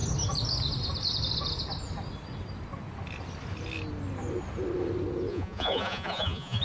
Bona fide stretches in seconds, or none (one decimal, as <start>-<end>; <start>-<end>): 0.0-5.3